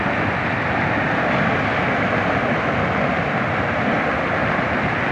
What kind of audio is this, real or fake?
real